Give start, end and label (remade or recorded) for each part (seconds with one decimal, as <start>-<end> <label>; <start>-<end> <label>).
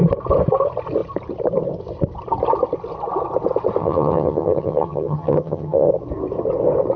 0.0-3.8 recorded; 3.8-5.9 remade; 5.9-7.0 recorded